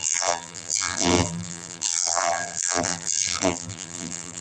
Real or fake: fake